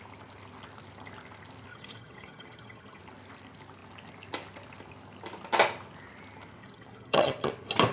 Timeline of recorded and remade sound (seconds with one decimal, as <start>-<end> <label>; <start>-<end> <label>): 0.0-1.7 recorded; 1.7-3.0 remade; 3.0-6.6 recorded; 6.6-7.5 remade; 7.5-7.9 recorded